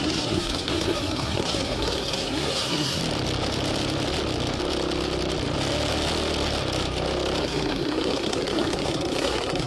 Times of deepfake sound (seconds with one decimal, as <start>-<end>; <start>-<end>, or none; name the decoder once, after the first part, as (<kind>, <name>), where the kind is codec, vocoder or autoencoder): 0.0-3.0 (codec, SNAC); 7.4-9.7